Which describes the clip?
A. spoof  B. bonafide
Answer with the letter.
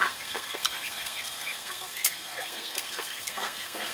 A